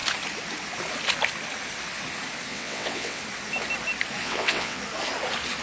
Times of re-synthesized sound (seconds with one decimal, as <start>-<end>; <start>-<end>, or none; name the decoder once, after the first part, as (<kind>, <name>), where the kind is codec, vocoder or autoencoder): 2.5-3.2 (vocoder, WaveNeXt); 4.2-4.8